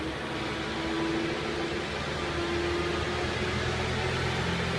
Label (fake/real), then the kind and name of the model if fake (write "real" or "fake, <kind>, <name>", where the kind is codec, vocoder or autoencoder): real